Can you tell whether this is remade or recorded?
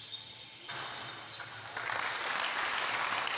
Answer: recorded